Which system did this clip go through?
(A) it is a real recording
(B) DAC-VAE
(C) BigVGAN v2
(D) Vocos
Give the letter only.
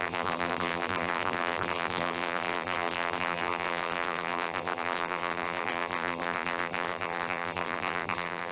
C